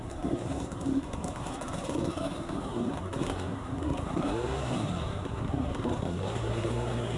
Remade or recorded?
remade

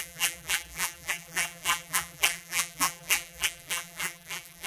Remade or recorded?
remade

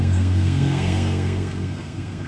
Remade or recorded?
remade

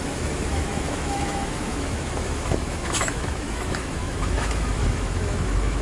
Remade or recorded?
remade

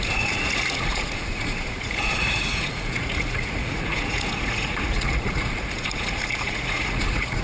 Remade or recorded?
remade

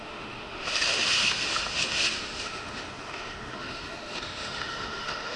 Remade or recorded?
remade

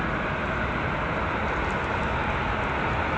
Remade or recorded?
recorded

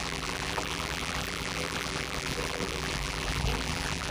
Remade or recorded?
remade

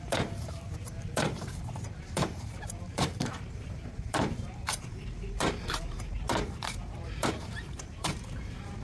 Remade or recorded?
remade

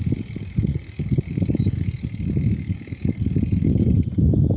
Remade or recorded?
recorded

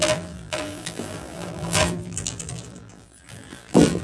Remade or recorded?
remade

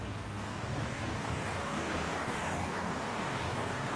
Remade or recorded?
remade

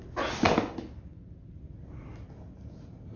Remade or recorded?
recorded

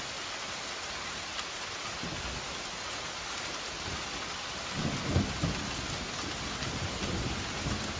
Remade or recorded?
recorded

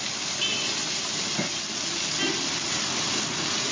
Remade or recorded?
recorded